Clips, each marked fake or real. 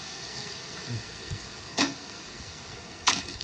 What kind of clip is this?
fake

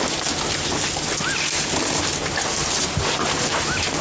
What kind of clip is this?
real